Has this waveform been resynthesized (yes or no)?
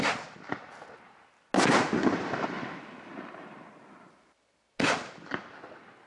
no